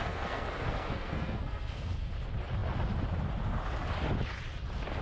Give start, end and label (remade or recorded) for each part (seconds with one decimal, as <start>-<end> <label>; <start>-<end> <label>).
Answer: 0.0-2.1 remade; 2.1-5.0 recorded